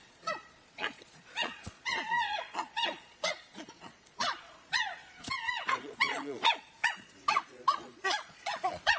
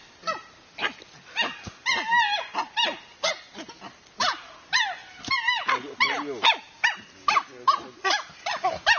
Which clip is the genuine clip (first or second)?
second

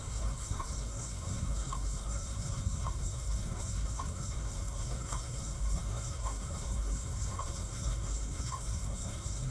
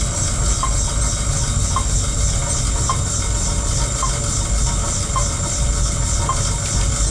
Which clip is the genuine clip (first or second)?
second